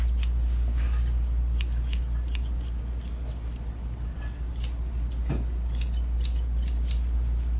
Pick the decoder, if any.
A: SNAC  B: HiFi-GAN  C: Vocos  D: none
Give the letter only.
D